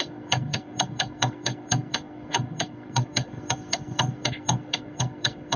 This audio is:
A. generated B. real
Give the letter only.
A